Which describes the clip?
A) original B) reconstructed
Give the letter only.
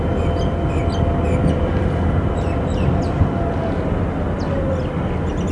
A